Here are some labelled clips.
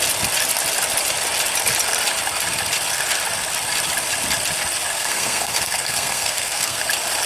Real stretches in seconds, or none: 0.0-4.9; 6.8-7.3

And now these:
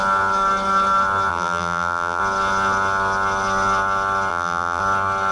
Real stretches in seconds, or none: 0.0-1.3; 2.2-4.3; 4.8-5.3

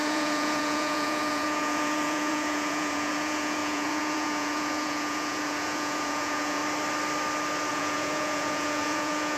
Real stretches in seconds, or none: 6.6-7.7

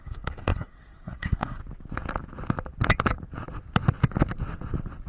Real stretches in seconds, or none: 1.6-5.1

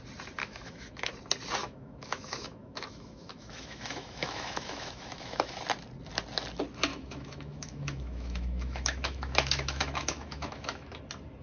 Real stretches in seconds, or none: 0.0-0.4; 1.1-1.6; 5.6-6.9; 11.0-11.4

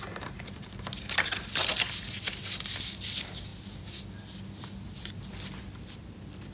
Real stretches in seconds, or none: 0.0-6.5